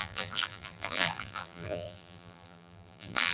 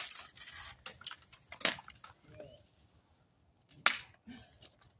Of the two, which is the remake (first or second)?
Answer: first